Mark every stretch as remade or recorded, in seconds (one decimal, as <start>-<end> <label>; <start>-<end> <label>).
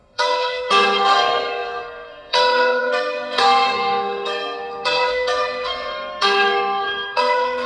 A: 0.0-7.7 remade